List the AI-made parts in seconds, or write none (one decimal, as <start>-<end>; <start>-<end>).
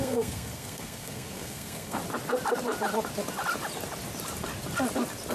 0.0-2.0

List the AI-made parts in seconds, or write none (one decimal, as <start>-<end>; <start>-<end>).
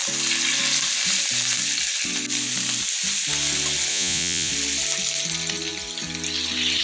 3.9-4.5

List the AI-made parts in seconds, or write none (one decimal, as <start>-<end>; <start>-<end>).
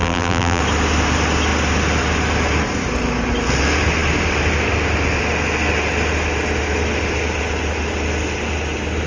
0.0-0.6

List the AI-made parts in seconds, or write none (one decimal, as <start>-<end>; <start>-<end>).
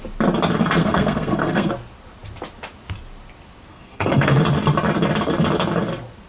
0.8-1.7; 3.7-4.4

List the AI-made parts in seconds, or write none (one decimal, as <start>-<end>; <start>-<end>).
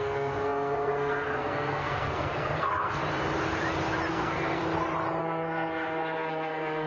0.0-3.0; 4.1-4.6; 5.2-6.9